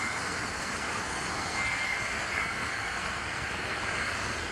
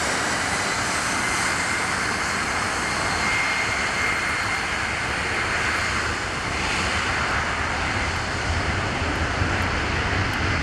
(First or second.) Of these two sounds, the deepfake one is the first